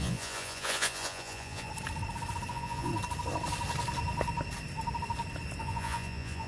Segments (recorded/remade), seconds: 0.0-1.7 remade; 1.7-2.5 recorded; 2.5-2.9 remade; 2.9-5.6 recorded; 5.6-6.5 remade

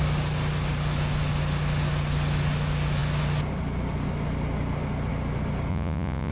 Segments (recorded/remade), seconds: 0.0-5.7 recorded; 5.7-6.3 remade

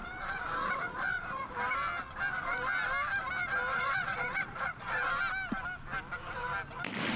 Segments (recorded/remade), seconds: 0.0-1.5 remade; 1.5-3.7 recorded; 3.7-5.0 remade; 5.0-7.2 recorded

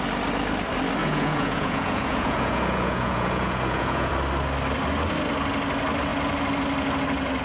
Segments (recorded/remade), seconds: 0.0-1.0 recorded; 1.0-4.1 remade; 4.1-7.4 recorded

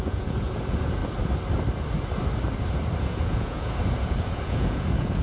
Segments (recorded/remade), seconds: 0.0-1.0 remade; 1.0-3.0 recorded; 3.0-5.2 remade